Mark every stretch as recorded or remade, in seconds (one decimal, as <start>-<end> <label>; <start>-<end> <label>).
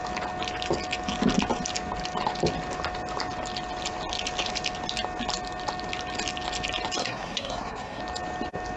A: 0.0-7.0 recorded; 7.0-8.0 remade; 8.0-8.8 recorded